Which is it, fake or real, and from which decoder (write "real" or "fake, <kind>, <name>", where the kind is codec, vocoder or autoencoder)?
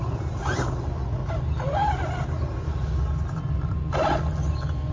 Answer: real